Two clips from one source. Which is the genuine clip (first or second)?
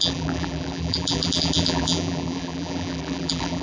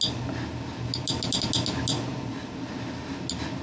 second